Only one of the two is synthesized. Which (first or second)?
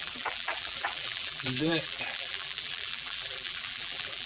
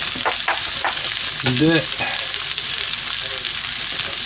first